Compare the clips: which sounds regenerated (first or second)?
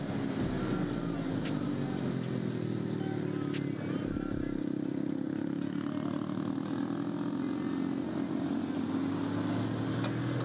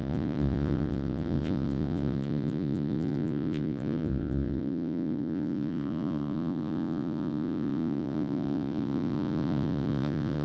second